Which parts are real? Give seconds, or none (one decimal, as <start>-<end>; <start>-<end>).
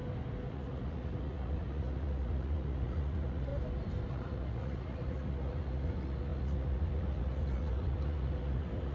0.0-0.5; 3.5-4.1